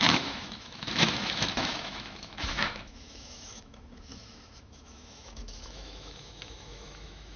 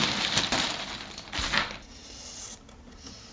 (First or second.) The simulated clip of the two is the first